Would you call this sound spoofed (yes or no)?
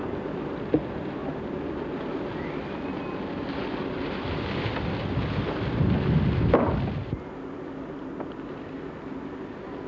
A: no